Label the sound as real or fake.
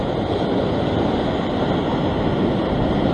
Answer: real